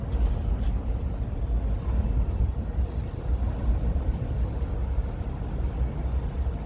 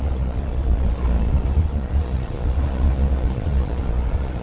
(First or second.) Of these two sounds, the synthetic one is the second